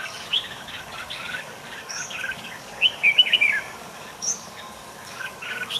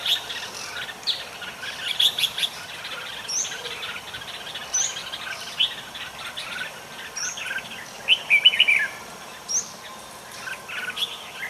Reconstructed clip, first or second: first